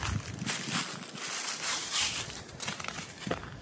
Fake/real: fake